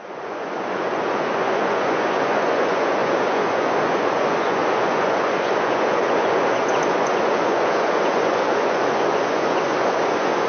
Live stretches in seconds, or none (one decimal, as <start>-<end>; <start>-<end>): none